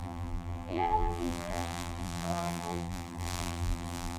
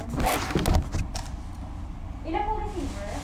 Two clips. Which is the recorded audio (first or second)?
second